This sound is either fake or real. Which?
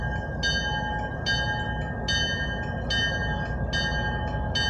real